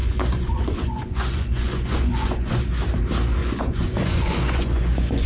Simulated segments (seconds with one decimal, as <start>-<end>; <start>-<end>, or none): 0.0-2.6; 3.4-5.3